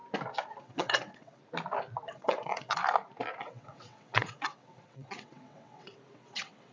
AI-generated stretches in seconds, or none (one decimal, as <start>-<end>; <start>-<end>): 0.6-1.4; 2.1-2.8; 3.4-6.7